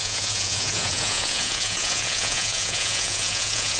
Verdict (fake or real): fake